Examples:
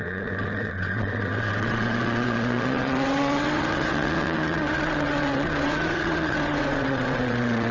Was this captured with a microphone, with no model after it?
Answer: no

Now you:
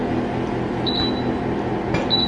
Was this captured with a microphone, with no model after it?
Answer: yes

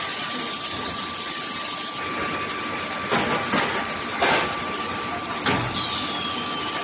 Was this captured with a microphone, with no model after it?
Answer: yes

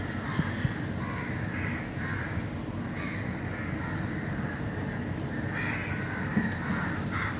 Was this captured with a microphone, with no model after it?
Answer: yes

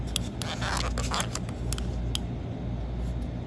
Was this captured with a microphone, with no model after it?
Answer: yes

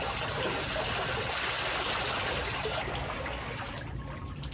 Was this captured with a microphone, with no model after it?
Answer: yes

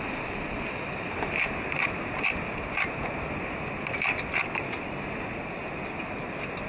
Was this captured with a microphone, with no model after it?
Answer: yes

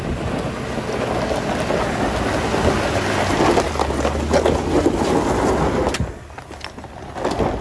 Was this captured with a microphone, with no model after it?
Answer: yes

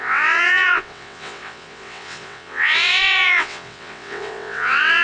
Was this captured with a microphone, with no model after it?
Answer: no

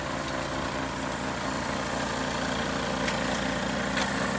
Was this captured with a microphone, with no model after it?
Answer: yes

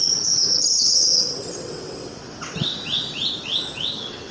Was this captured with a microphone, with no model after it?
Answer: no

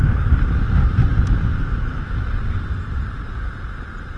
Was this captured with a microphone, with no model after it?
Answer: yes